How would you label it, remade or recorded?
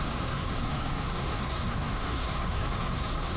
remade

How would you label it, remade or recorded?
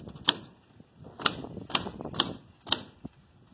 recorded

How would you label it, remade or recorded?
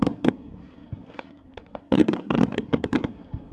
remade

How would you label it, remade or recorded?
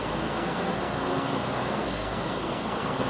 remade